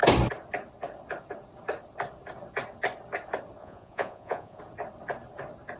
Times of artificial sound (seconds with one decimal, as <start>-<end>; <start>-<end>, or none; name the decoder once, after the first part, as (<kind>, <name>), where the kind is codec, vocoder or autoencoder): 3.6-4.6 (vocoder, Vocos)